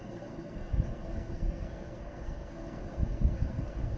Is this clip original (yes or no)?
no